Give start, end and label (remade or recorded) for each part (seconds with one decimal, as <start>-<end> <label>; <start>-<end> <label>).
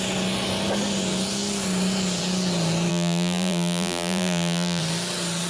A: 0.0-2.9 recorded; 2.9-4.8 remade; 4.8-5.5 recorded